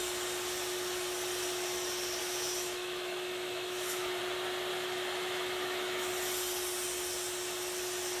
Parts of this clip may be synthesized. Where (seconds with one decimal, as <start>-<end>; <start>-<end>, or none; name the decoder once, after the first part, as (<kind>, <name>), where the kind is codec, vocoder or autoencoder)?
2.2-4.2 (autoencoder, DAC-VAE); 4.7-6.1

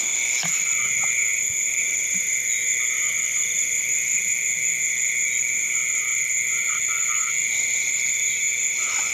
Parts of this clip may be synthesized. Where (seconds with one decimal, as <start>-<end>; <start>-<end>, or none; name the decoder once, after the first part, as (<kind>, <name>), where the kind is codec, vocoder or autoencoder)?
none

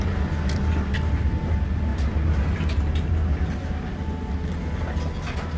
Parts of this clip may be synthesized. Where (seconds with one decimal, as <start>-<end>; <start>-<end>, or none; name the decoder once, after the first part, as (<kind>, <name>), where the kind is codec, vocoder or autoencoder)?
none